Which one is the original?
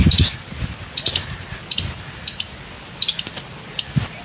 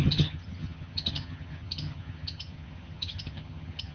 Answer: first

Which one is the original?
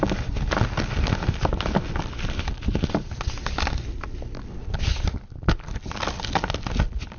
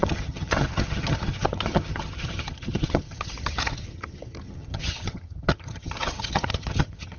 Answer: first